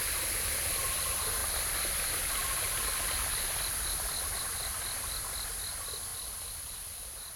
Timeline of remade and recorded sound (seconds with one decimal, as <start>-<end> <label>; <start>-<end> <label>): 0.0-6.1 recorded; 6.1-7.4 remade